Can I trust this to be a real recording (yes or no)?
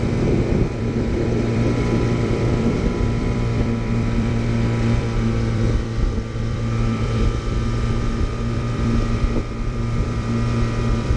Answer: no